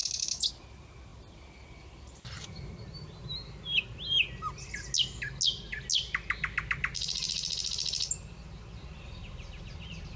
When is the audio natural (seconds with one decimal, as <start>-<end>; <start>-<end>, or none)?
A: 0.5-10.2